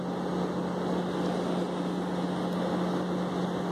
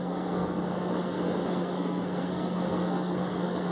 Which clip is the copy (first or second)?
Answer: second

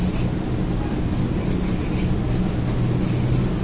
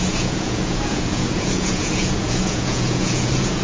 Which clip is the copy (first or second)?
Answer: second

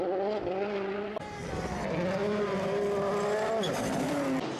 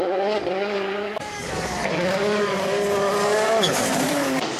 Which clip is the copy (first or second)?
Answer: second